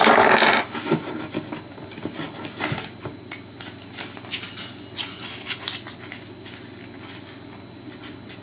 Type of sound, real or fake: real